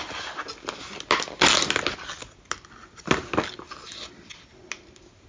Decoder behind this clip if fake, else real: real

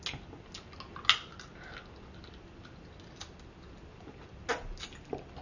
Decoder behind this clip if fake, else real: real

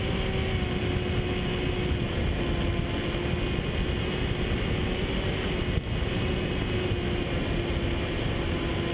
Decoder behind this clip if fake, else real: real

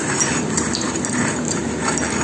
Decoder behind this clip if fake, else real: real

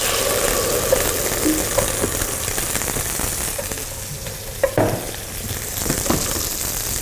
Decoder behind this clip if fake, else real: real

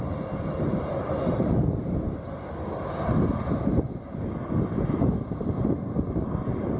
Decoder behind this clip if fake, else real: real